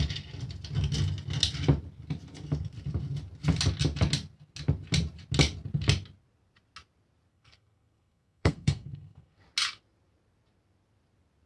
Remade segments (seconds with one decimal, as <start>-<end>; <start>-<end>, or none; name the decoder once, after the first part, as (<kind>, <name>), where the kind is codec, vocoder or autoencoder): 7.3-9.4 (codec, SNAC)